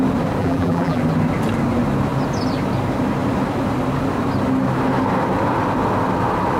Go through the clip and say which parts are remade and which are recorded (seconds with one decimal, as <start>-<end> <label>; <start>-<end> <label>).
0.0-0.4 recorded; 0.4-1.0 remade; 1.0-6.6 recorded